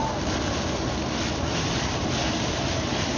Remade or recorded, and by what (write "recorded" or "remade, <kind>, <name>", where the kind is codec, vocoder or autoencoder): remade, vocoder, BigVGAN v2